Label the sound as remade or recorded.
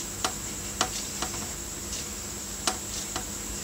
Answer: recorded